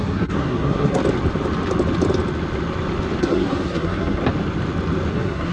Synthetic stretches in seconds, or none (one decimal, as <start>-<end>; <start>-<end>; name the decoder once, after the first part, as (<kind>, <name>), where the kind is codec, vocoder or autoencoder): 0.0-1.0 (codec, SNAC); 3.2-4.2; 5.1-5.5